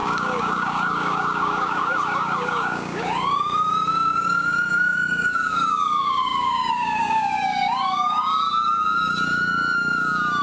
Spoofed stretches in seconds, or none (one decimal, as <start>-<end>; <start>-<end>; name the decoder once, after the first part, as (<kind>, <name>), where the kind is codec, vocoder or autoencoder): 0.0-10.4 (codec, DAC)